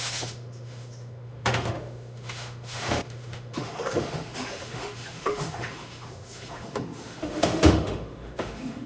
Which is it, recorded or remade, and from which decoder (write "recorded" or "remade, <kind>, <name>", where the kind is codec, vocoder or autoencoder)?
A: remade, autoencoder, DAC-VAE